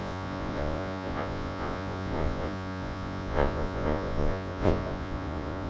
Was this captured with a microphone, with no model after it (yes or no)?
no